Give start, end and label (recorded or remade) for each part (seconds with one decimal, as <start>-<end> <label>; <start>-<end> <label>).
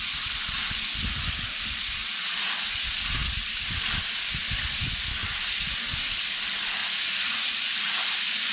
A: 0.0-2.0 recorded; 2.0-2.5 remade; 2.5-6.8 recorded; 6.8-8.0 remade; 8.0-8.5 recorded